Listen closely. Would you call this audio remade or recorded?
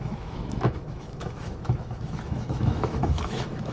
remade